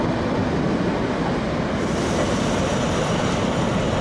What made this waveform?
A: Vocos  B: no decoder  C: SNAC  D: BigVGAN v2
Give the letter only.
B